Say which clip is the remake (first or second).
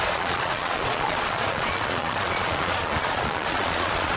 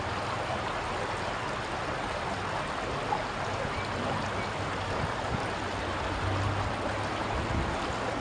first